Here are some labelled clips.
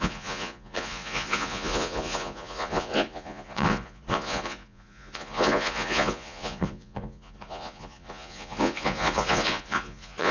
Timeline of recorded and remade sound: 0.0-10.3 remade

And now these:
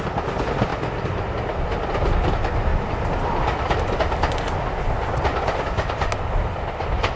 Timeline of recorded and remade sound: 0.0-7.2 recorded

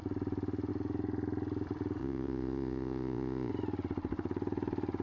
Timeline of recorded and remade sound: 0.0-2.0 recorded; 2.0-3.5 remade; 3.5-5.0 recorded

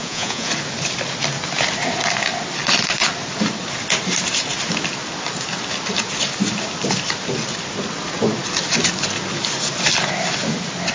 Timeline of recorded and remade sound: 0.0-0.5 remade; 0.5-10.9 recorded

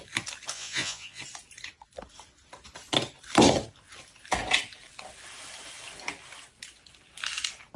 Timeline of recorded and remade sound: 0.0-0.5 recorded; 0.5-1.2 remade; 1.2-7.8 recorded